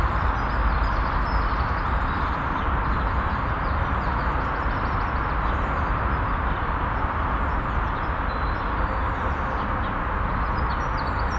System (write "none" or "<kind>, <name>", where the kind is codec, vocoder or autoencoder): none